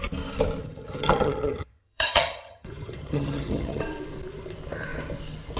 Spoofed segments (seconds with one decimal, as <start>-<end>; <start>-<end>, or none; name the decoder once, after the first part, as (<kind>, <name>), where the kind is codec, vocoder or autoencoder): 0.6-3.8 (vocoder, HiFi-GAN)